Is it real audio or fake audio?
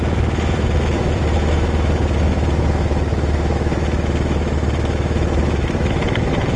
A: fake